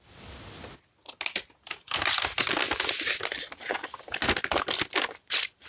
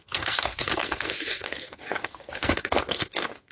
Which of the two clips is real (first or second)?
first